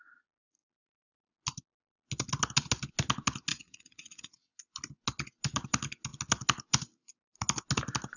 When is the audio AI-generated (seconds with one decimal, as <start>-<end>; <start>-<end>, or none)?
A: 3.5-4.6